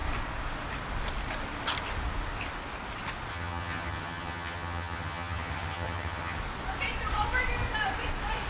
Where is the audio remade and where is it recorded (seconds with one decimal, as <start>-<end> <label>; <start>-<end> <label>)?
0.0-3.3 recorded; 3.3-6.4 remade; 6.4-8.5 recorded